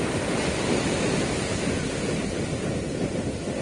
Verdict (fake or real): real